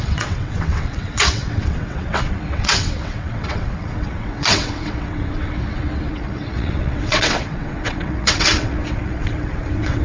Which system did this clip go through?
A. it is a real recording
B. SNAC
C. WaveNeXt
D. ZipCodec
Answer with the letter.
C